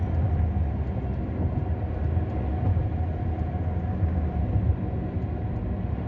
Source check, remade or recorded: recorded